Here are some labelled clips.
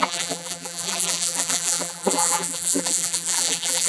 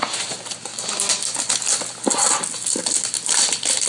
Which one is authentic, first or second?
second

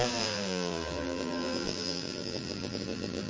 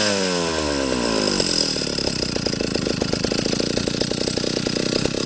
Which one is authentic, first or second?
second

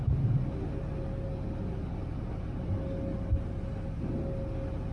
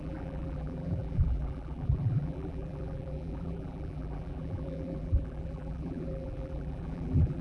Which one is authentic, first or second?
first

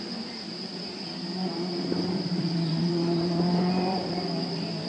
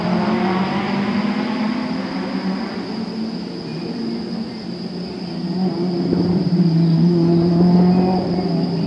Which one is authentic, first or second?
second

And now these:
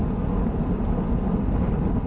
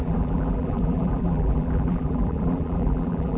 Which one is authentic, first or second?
first